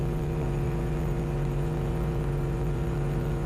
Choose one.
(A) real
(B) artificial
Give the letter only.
B